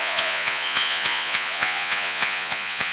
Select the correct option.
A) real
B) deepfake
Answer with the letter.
B